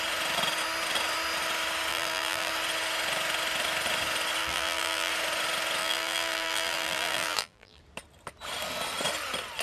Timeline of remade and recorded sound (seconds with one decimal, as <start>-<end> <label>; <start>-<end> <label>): 0.0-1.9 recorded; 1.9-2.5 remade; 2.5-4.4 recorded; 4.4-5.1 remade; 5.1-5.8 recorded; 5.8-7.8 remade; 7.8-9.6 recorded